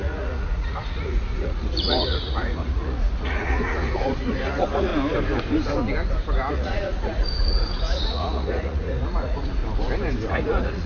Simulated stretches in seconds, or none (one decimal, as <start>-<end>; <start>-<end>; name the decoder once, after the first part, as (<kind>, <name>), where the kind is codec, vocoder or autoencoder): 0.0-4.9 (vocoder, Vocos); 6.5-9.6; 10.3-10.9